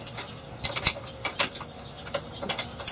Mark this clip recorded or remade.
recorded